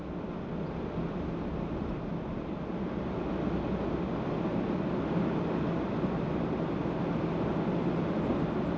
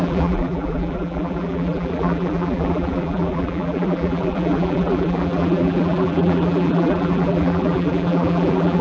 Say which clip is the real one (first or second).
first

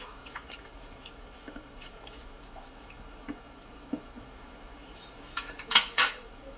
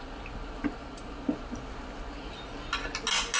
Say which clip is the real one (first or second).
second